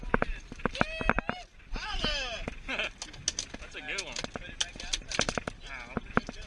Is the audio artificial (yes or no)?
no